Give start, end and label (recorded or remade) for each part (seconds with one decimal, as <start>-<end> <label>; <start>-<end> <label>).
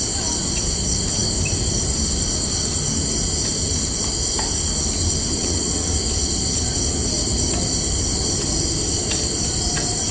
0.0-5.4 recorded; 5.4-5.9 remade; 5.9-10.1 recorded